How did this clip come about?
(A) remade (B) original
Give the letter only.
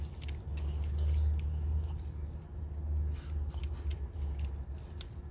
B